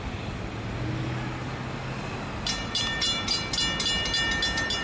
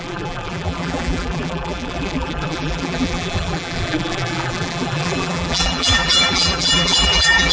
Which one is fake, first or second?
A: second